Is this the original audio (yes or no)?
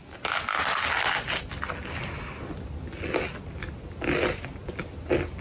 yes